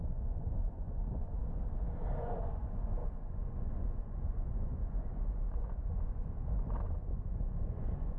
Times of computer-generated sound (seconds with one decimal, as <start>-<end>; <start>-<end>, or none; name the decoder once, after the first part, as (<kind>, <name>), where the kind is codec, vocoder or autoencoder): 0.0-1.4 (vocoder, Vocos); 2.2-8.2